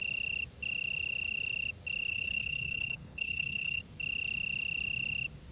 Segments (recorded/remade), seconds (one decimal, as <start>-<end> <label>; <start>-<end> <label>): 0.0-2.1 recorded; 2.1-3.8 remade; 3.8-5.5 recorded